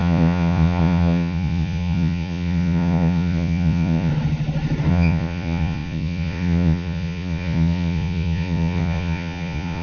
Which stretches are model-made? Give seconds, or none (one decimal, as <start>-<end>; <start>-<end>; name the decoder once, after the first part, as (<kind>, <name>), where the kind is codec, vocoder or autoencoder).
0.0-4.1 (vocoder, Vocos); 4.9-9.8